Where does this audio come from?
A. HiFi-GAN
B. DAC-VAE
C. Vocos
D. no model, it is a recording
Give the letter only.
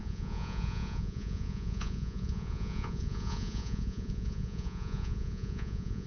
C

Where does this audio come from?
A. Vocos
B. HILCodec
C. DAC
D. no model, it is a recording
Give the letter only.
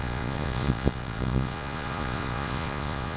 A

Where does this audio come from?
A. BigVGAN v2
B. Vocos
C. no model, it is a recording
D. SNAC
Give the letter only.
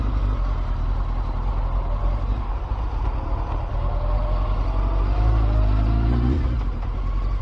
C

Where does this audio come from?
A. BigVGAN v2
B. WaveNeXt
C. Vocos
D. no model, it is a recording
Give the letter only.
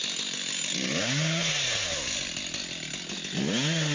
D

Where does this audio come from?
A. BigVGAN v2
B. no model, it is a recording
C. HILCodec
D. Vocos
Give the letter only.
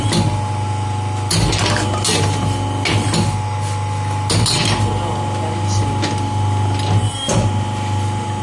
B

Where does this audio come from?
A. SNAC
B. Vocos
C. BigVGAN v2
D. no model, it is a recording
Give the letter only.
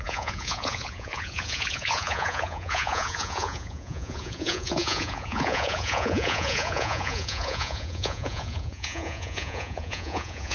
B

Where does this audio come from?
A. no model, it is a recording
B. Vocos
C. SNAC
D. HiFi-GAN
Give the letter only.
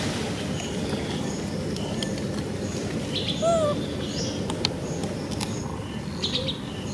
A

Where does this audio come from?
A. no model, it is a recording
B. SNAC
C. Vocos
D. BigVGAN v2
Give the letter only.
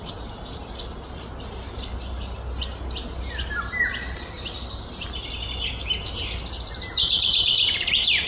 A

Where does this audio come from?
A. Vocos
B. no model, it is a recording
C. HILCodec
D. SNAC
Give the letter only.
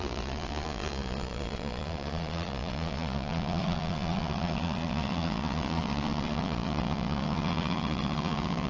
A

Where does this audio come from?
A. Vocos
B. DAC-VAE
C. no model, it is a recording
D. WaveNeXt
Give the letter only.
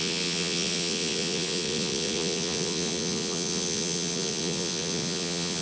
A